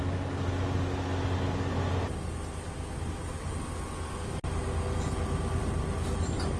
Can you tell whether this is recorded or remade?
recorded